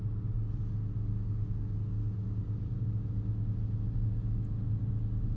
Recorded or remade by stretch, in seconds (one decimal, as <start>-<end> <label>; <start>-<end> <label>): 0.0-5.4 recorded

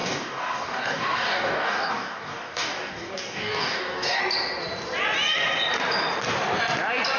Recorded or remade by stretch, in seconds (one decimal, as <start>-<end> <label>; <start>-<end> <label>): 0.0-4.2 remade; 4.2-7.2 recorded

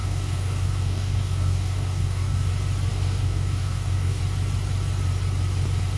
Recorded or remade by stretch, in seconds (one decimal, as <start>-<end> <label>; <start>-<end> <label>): 0.0-2.5 remade; 2.5-2.9 recorded; 2.9-4.2 remade; 4.2-6.0 recorded

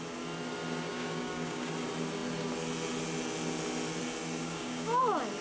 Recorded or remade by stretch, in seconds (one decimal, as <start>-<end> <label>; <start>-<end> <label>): 0.0-0.9 recorded; 0.9-1.7 remade; 1.7-4.4 recorded; 4.4-5.0 remade; 5.0-5.4 recorded

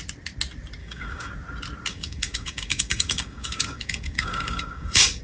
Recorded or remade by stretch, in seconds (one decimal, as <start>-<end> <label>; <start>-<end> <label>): 0.0-0.8 recorded; 0.8-1.3 remade; 1.3-1.9 recorded; 1.9-5.2 remade

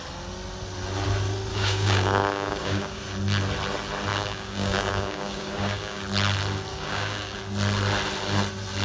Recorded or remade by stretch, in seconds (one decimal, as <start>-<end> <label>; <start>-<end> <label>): 0.0-1.5 recorded; 1.5-3.0 remade; 3.0-4.1 recorded; 4.1-6.0 remade; 6.0-6.7 recorded; 6.7-7.4 remade; 7.4-8.8 recorded

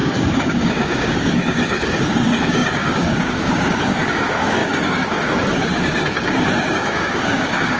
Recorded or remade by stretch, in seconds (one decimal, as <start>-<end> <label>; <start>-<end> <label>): 0.0-7.8 remade

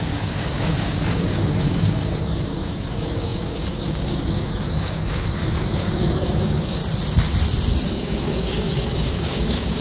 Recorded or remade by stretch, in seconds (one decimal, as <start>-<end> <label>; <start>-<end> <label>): 0.0-6.8 remade; 6.8-7.9 recorded; 7.9-9.8 remade